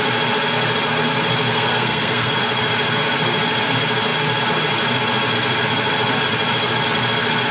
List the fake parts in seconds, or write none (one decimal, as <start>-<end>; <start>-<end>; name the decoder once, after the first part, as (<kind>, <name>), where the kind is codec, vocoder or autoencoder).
1.5-2.3 (codec, SNAC)